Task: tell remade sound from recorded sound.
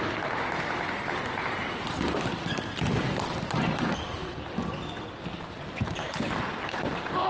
remade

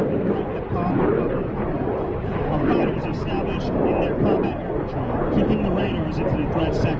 recorded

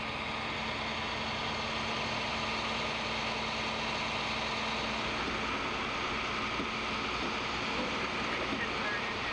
recorded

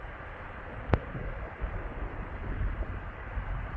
remade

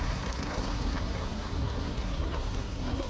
remade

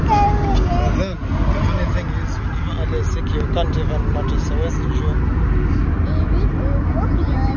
recorded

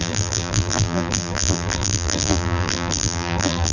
remade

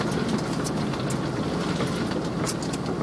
recorded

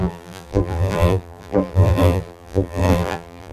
remade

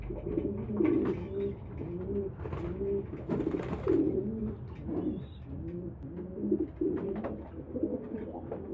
recorded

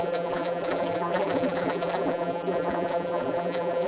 remade